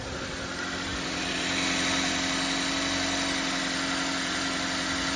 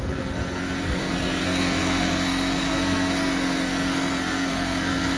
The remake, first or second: second